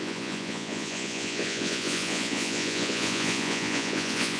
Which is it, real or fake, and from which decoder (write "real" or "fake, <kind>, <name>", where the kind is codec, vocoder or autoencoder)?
fake, vocoder, Vocos